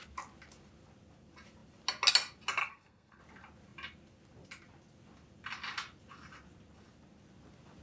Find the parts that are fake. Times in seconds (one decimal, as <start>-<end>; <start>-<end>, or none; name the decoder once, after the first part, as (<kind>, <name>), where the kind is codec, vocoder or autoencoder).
2.6-3.2 (codec, SNAC)

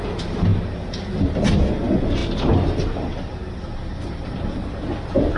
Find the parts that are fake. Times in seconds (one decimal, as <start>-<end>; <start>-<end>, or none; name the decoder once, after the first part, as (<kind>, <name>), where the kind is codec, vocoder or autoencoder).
none

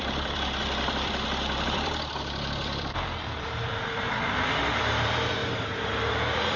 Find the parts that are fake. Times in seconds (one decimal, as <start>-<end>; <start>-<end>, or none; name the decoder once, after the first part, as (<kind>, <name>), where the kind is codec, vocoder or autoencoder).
0.0-5.4 (vocoder, BigVGAN v2); 6.0-6.6

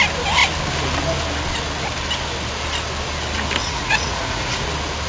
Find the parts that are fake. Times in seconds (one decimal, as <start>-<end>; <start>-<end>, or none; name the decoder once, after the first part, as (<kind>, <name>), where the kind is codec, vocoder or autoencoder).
3.6-4.6 (vocoder, Vocos)